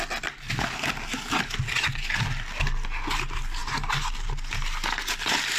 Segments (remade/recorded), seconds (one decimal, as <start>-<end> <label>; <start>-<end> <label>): 0.0-3.6 recorded; 3.6-4.3 remade; 4.3-5.6 recorded